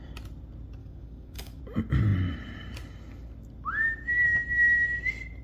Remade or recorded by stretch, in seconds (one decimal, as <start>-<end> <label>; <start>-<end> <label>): 0.0-0.8 recorded; 0.8-1.6 remade; 1.6-5.4 recorded